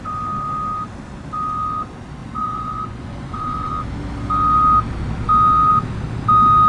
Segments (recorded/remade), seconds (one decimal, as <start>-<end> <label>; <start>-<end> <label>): 0.0-2.2 recorded; 2.2-3.7 remade; 3.7-6.7 recorded